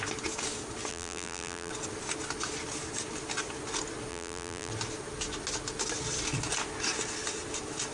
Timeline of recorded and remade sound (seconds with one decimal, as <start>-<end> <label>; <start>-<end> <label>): 0.0-0.9 recorded; 0.9-1.7 remade; 1.7-4.1 recorded; 4.1-4.7 remade; 4.7-7.9 recorded

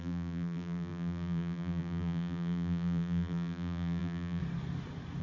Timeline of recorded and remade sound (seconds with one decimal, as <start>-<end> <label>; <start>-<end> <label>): 0.0-4.4 remade; 4.4-5.2 recorded

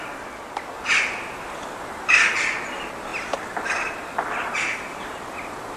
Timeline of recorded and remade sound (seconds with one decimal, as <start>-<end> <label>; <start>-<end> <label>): 0.0-5.8 recorded

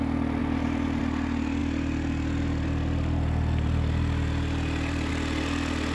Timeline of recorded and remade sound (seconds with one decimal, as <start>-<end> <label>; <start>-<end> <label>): 0.0-0.4 recorded; 0.4-1.0 remade; 1.0-5.9 recorded

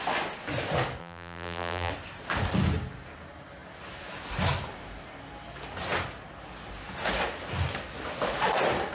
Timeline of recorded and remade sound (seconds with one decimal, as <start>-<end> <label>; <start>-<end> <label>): 0.0-1.0 recorded; 1.0-1.9 remade; 1.9-8.9 recorded

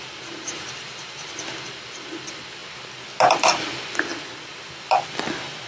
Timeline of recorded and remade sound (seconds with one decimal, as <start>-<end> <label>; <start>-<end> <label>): 0.0-4.1 recorded; 4.1-5.7 remade

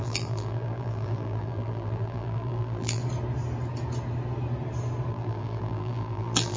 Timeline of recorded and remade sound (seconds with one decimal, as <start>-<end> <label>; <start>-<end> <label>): 0.0-3.0 remade; 3.0-5.1 recorded; 5.1-6.6 remade

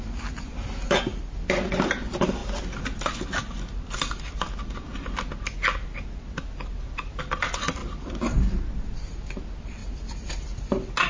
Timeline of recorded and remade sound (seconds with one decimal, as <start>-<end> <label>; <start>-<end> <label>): 0.0-11.1 recorded